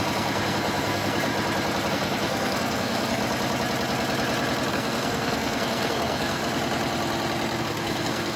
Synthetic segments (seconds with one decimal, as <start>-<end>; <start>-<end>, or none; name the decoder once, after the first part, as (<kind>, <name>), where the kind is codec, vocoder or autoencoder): 0.0-1.3 (codec, SNAC); 1.9-3.2; 4.7-6.4; 7.6-8.4